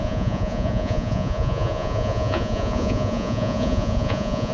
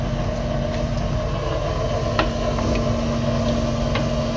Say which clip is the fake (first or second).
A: first